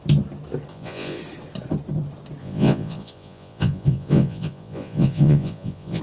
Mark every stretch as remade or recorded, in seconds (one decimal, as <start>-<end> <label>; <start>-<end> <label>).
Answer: 0.0-0.7 recorded; 0.7-1.2 remade; 1.2-2.4 recorded; 2.4-6.0 remade

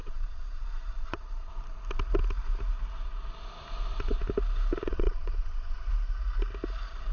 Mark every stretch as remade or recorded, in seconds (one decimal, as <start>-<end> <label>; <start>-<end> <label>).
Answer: 0.0-1.5 remade; 1.5-4.8 recorded; 4.8-5.9 remade; 5.9-7.1 recorded

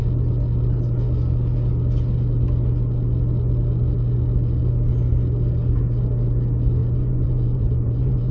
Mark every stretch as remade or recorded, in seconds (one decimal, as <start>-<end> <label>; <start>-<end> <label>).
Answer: 0.0-6.8 recorded; 6.8-8.3 remade

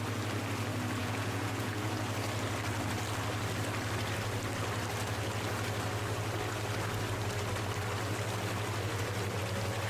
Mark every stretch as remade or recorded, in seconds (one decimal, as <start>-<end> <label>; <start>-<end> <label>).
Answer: 0.0-1.0 recorded; 1.0-1.9 remade; 1.9-9.9 recorded